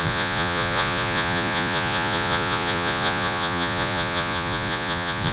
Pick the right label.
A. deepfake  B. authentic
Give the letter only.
A